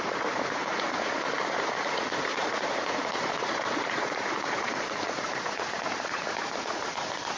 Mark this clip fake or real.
fake